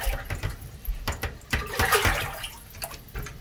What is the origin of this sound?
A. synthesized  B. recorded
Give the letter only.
B